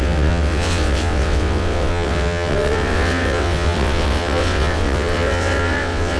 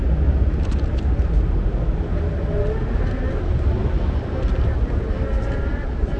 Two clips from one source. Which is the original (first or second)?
second